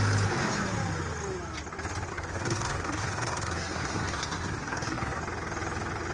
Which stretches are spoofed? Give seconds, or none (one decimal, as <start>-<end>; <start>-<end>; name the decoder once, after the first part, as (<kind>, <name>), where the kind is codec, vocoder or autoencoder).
2.1-5.2 (codec, SNAC)